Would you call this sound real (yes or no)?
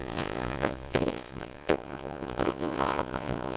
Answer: no